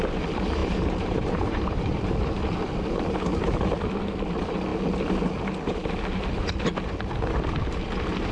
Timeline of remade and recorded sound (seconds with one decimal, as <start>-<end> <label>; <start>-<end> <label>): 0.0-0.6 recorded; 0.6-2.4 remade; 2.4-8.3 recorded